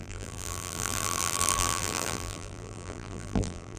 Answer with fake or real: fake